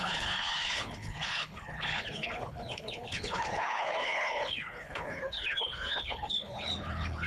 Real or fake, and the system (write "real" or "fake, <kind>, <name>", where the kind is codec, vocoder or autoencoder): fake, codec, HILCodec